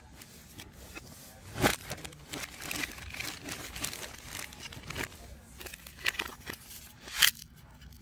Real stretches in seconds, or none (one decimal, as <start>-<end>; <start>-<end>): 0.0-1.7; 3.2-8.0

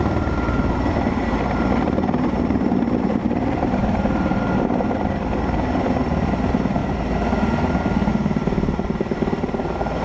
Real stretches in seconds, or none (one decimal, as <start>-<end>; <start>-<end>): 0.0-1.2; 5.0-10.0